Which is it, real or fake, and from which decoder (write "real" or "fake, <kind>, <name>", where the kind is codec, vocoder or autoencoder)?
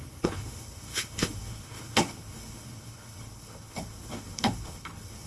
fake, codec, HILCodec